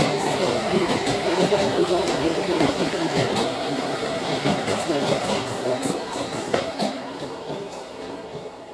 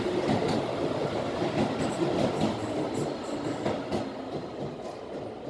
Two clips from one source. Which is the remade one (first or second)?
first